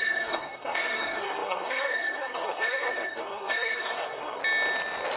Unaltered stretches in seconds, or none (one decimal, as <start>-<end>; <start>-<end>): 4.4-5.2